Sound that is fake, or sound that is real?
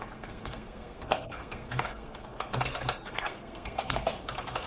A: fake